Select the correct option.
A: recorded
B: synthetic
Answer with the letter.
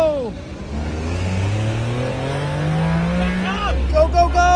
A